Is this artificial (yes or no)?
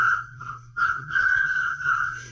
yes